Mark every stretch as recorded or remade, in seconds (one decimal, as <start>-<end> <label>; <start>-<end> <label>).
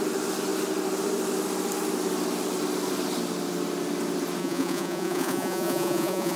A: 0.0-4.4 recorded; 4.4-6.4 remade